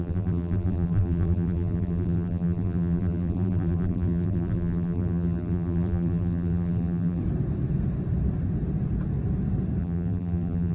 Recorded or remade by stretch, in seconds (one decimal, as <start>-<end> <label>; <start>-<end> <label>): 0.0-7.2 remade; 7.2-9.8 recorded; 9.8-10.7 remade